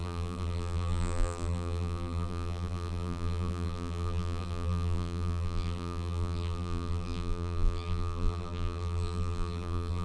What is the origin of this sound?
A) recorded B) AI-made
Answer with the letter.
B